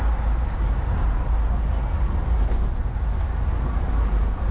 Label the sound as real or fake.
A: real